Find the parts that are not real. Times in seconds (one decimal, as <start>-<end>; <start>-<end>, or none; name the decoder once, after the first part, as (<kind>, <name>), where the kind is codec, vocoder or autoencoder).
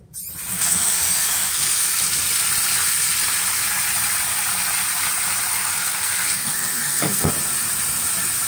0.5-2.0 (codec, SNAC); 5.5-7.3